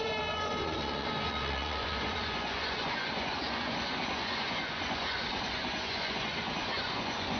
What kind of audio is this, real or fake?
fake